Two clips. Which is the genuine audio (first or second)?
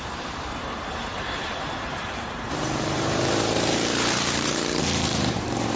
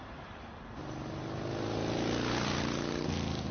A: second